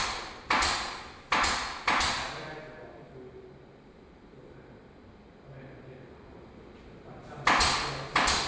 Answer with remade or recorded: recorded